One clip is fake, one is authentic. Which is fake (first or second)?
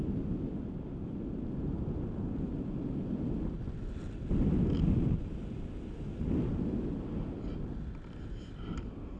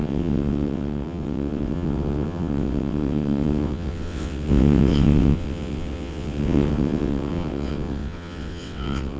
second